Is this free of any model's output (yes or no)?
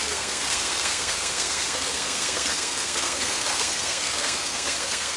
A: no